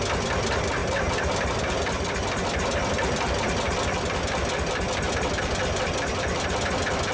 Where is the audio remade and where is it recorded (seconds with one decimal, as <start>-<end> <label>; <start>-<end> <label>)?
0.0-7.1 recorded